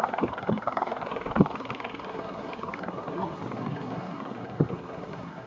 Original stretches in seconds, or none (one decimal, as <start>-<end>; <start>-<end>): none